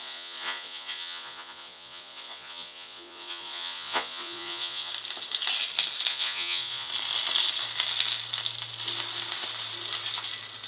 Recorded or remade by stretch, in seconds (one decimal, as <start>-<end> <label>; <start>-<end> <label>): 0.0-4.9 remade; 4.9-6.1 recorded; 6.1-6.9 remade; 6.9-10.7 recorded